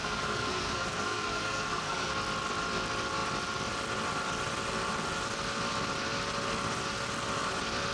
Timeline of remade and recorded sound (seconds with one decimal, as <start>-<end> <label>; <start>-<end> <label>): 0.0-2.1 remade; 2.1-7.9 recorded

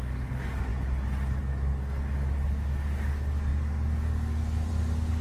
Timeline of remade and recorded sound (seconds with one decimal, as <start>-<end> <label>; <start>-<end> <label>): 0.0-0.7 remade; 0.7-1.4 recorded; 1.4-5.2 remade

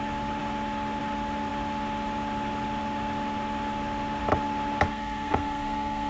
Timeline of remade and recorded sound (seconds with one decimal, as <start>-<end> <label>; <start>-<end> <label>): 0.0-4.9 recorded; 4.9-6.1 remade

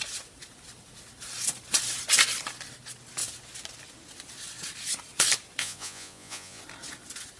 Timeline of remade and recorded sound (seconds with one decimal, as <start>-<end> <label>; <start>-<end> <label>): 0.0-5.6 recorded; 5.6-6.6 remade; 6.6-7.4 recorded

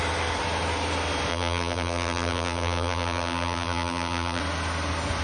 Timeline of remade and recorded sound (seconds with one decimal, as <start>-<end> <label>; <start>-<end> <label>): 0.0-1.3 recorded; 1.3-4.4 remade; 4.4-5.2 recorded

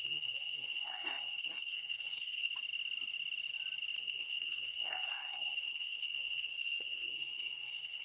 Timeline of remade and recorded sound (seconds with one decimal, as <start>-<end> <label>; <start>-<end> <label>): 0.0-2.5 remade; 2.5-4.0 recorded; 4.0-8.0 remade